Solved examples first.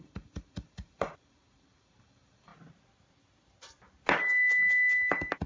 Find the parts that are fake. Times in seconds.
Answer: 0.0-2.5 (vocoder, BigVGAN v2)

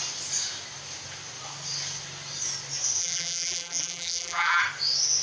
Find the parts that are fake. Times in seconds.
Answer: 3.0-4.6 (vocoder, BigVGAN v2)

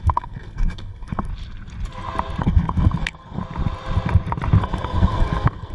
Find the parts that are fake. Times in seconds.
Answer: 0.0-1.3 (codec, SNAC); 2.4-3.4; 4.6-5.7

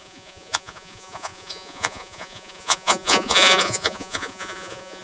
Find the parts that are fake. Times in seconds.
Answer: 0.0-5.0 (vocoder, Vocos)

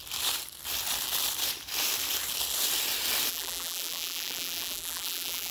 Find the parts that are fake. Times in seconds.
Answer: 3.3-5.5 (vocoder, BigVGAN v2)

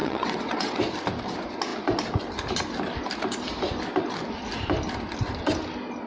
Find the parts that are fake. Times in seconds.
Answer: 0.0-0.8 (vocoder, WaveNeXt)

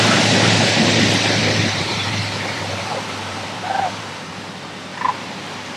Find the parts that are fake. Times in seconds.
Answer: 1.4-4.3 (vocoder, BigVGAN v2)

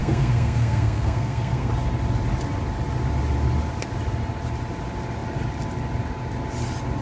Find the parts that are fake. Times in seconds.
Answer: 0.0-1.7 (codec, SNAC)